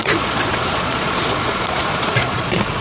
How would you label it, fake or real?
fake